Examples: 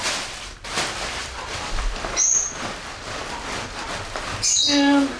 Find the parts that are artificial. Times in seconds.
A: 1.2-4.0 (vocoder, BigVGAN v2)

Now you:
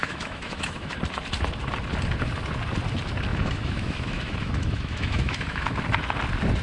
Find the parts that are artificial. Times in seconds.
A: 0.0-0.9 (autoencoder, DAC-VAE); 3.3-5.8

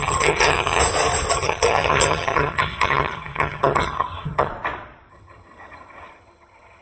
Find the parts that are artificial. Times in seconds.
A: 0.0-0.8 (vocoder, HiFi-GAN); 1.3-4.5; 5.1-6.8

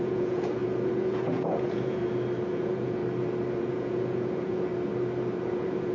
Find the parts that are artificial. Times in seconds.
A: 0.0-2.0 (vocoder, Vocos); 2.5-3.0; 3.6-4.7; 5.4-5.9

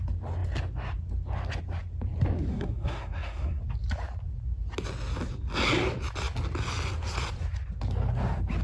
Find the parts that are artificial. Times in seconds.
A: 2.5-3.6 (codec, SNAC)